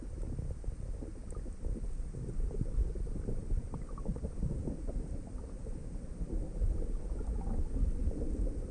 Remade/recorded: recorded